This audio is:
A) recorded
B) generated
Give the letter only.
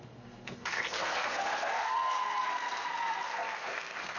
B